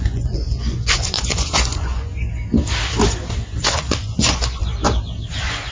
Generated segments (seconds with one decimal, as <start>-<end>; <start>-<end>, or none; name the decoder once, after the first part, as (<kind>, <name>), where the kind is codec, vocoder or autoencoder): 0.0-2.1 (vocoder, Vocos); 3.6-4.6; 5.3-5.7